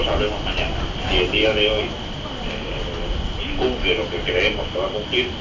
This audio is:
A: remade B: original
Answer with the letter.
B